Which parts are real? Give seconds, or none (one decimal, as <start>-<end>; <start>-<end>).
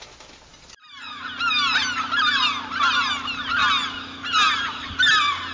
0.0-5.5